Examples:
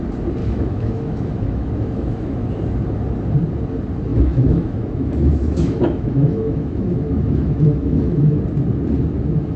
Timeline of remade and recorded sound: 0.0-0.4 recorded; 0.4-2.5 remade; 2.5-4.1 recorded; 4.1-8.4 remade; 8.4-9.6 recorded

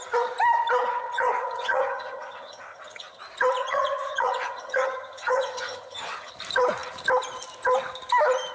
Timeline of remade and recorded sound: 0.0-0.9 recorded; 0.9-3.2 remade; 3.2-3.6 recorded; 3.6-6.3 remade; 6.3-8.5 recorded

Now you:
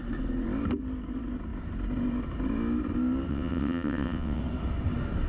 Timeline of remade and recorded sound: 0.0-3.3 recorded; 3.3-4.4 remade; 4.4-5.3 recorded

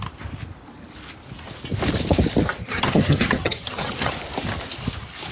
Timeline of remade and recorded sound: 0.0-2.6 recorded; 2.6-4.1 remade; 4.1-5.3 recorded